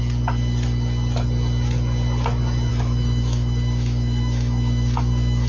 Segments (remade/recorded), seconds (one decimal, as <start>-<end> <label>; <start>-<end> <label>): 0.0-2.7 recorded; 2.7-5.5 remade